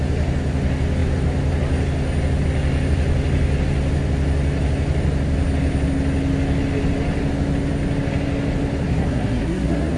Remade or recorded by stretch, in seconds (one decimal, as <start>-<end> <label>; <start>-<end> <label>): 0.0-8.9 recorded; 8.9-10.0 remade